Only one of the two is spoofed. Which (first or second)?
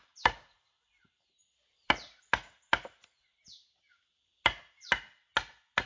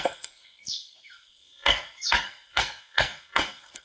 second